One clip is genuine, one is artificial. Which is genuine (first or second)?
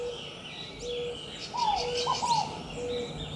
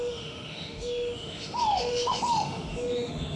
first